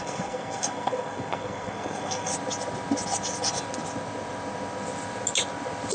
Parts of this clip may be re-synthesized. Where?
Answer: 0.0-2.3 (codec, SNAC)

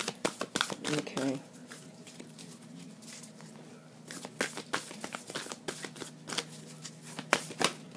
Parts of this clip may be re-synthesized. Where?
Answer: 1.6-2.4 (vocoder, BigVGAN v2)

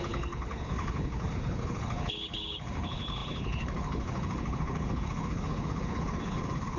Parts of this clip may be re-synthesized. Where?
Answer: 0.0-6.8 (codec, HILCodec)

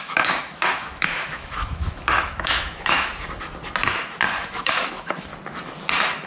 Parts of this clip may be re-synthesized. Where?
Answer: 0.0-3.1 (autoencoder, DAC-VAE); 4.4-5.3

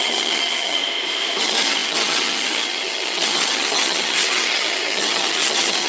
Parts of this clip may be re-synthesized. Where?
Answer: 0.0-0.8 (vocoder, HiFi-GAN); 1.4-5.9

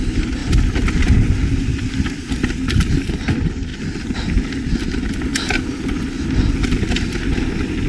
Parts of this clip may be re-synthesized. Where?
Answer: 0.4-1.1 (vocoder, BigVGAN v2)

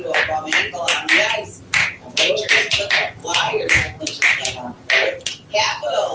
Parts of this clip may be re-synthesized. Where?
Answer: 1.8-2.3 (codec, DAC); 3.2-4.0

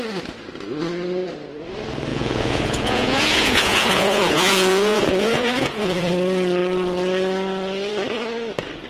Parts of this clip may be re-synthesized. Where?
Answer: 2.1-6.1 (vocoder, Vocos)